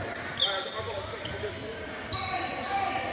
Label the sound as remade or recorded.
recorded